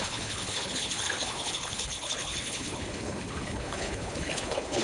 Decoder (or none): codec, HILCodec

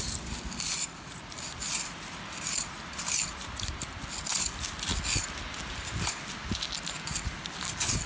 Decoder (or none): none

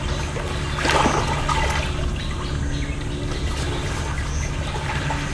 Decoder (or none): none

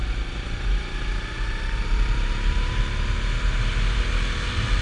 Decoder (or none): none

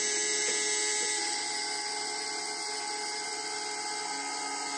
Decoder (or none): none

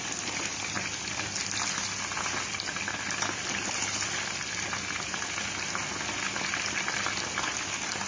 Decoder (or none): none